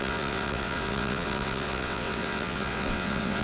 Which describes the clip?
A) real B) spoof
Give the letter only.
B